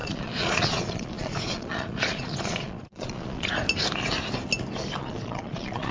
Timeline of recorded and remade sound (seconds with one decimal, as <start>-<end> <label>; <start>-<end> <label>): 0.0-3.5 remade; 3.5-5.0 recorded; 5.0-5.9 remade